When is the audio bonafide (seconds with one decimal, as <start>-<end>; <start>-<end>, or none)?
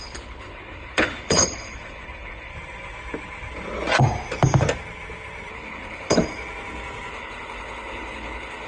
2.5-5.5; 6.2-7.1